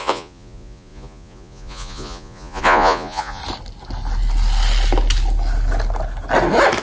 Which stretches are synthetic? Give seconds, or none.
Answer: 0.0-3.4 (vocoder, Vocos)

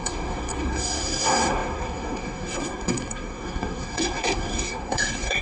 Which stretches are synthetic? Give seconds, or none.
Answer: 0.0-5.4 (codec, SNAC)